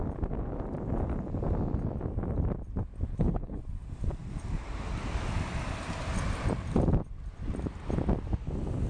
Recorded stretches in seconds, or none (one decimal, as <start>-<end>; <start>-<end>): 0.0-3.1; 3.6-8.9